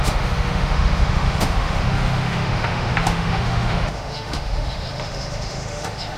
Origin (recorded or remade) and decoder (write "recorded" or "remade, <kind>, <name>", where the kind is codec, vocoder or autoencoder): remade, autoencoder, DAC-VAE